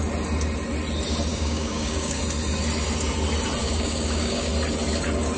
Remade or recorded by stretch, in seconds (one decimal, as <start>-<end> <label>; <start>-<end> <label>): 0.0-1.3 recorded; 1.3-2.2 remade; 2.2-3.6 recorded; 3.6-4.5 remade; 4.5-5.4 recorded